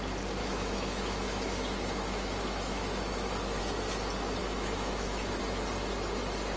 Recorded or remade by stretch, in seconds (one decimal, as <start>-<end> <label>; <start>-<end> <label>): 0.0-0.4 recorded; 0.4-3.6 remade; 3.6-4.4 recorded; 4.4-5.4 remade; 5.4-6.6 recorded